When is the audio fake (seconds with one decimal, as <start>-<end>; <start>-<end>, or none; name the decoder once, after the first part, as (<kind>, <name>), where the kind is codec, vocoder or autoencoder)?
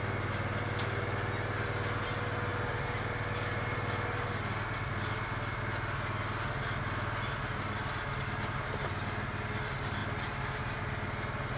none